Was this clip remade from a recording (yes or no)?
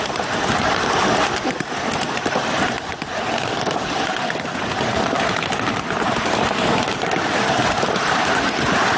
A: no